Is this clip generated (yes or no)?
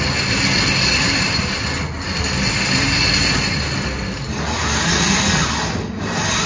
no